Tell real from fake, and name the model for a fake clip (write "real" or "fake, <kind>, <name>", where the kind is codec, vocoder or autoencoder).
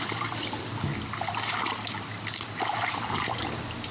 real